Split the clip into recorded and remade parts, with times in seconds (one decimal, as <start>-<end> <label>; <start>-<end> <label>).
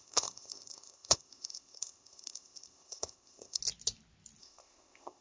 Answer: 0.0-3.6 remade; 3.6-4.4 recorded; 4.4-5.2 remade